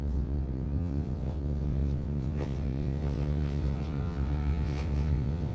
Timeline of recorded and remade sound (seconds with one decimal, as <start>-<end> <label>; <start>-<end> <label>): 0.0-5.5 remade